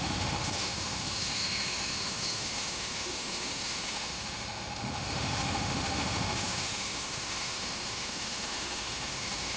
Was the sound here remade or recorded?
remade